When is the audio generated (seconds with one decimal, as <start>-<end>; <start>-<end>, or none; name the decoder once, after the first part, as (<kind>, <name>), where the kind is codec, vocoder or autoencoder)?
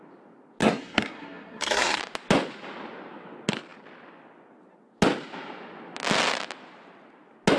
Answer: 0.6-2.0 (codec, SNAC)